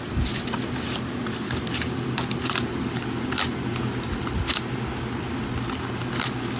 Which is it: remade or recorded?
recorded